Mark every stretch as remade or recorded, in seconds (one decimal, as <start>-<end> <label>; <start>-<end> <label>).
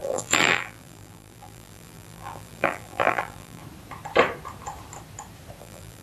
0.0-3.6 remade; 3.6-5.6 recorded; 5.6-6.0 remade